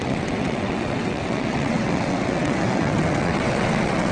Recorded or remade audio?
remade